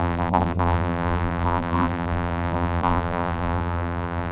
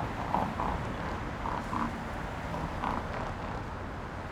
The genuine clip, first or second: second